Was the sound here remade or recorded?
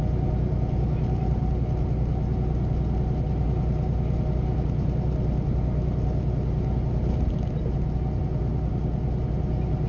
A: recorded